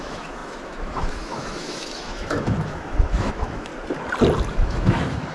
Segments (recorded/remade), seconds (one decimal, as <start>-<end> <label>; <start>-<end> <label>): 0.0-3.7 remade; 3.7-4.5 recorded; 4.5-5.3 remade

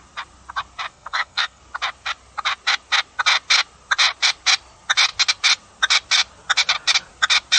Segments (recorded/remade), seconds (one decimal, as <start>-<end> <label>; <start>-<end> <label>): 0.0-0.9 recorded; 0.9-1.6 remade; 1.6-7.6 recorded

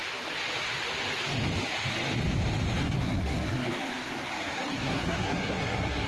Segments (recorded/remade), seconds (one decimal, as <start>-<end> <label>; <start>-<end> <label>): 0.0-2.8 recorded; 2.8-3.9 remade; 3.9-4.4 recorded; 4.4-6.1 remade

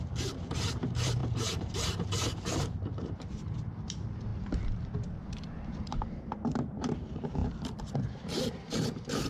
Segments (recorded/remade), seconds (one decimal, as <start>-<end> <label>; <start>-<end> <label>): 0.0-7.4 remade; 7.4-8.1 recorded; 8.1-9.3 remade

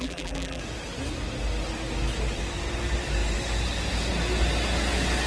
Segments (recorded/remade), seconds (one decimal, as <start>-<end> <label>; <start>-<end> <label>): 0.0-0.6 remade; 0.6-5.3 recorded

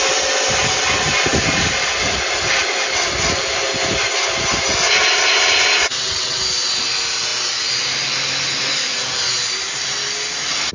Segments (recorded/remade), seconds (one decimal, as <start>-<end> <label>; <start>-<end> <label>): 0.0-5.8 recorded; 5.8-6.4 remade; 6.4-10.7 recorded

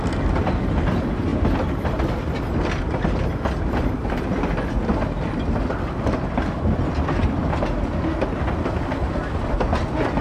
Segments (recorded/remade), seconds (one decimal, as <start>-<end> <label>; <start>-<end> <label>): 0.0-10.2 recorded